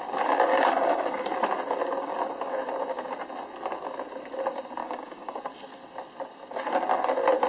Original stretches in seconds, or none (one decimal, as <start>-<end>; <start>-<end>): 0.0-0.5; 1.3-4.8; 5.4-7.5